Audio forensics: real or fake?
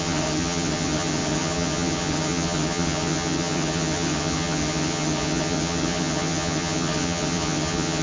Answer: fake